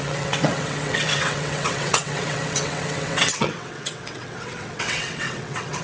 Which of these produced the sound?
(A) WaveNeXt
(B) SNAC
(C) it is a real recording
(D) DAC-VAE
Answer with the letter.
A